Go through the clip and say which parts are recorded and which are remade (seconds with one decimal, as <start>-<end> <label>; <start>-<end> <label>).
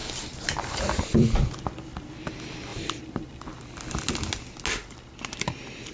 0.0-1.5 remade; 1.5-2.7 recorded; 2.7-4.1 remade; 4.1-5.9 recorded